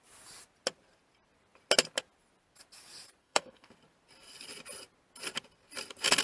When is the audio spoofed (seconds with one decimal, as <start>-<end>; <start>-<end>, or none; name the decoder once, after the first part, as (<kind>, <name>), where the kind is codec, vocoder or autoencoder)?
3.2-3.7 (codec, SNAC)